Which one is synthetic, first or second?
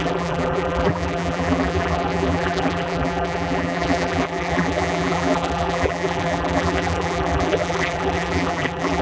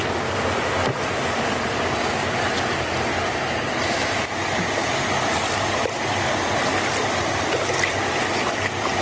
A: first